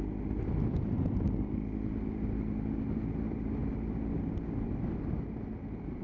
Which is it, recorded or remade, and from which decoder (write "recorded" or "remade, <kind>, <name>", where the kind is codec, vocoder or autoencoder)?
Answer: recorded